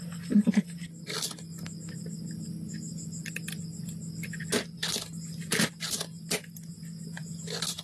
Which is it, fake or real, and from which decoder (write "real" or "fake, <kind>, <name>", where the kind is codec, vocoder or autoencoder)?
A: real